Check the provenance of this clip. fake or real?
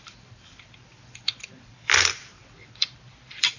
fake